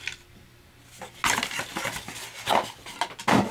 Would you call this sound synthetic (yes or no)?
no